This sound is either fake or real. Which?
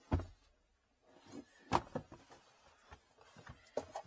real